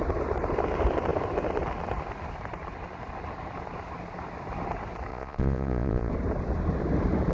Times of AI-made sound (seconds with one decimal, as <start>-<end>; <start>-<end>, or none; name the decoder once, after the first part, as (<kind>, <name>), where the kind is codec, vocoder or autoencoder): 5.1-6.1 (vocoder, Vocos)